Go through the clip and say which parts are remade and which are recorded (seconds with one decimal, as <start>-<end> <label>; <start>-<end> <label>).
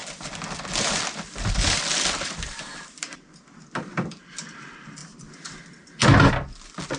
0.0-7.0 remade